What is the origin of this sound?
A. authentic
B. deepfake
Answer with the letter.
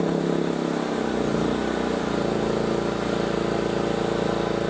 A